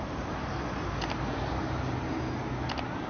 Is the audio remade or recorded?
recorded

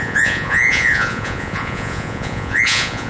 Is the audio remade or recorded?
remade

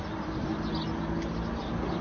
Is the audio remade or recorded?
recorded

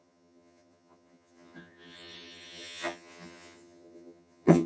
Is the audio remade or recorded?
remade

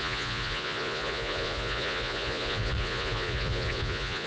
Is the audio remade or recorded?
remade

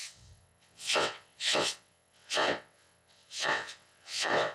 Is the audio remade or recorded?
remade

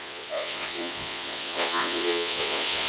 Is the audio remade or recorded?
remade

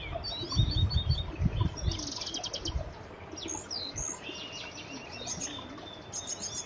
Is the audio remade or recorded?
recorded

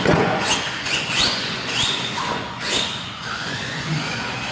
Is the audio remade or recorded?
remade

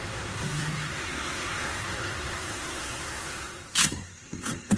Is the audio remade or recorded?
remade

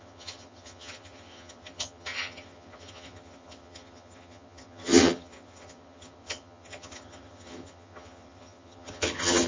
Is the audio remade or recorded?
remade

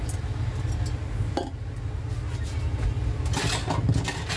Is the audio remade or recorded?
recorded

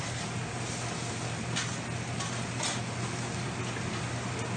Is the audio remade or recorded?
recorded